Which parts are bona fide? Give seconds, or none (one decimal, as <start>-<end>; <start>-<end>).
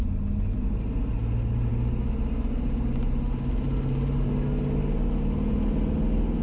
0.0-6.4